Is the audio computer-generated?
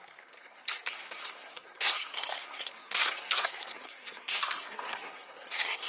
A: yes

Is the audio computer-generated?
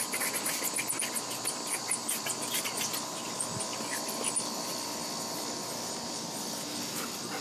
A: no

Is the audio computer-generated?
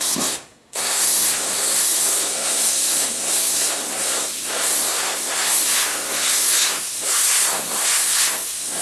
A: yes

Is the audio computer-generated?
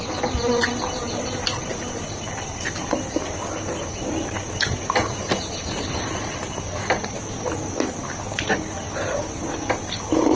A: no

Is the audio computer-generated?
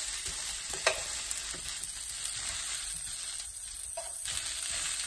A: no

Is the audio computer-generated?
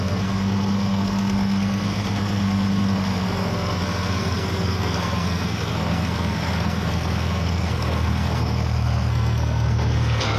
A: yes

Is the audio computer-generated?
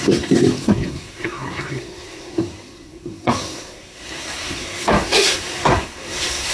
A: yes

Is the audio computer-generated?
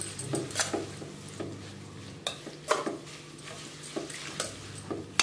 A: no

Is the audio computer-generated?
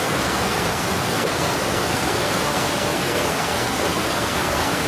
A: yes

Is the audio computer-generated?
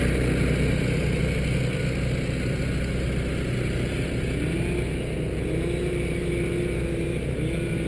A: no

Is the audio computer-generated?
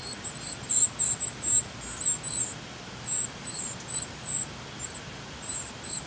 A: no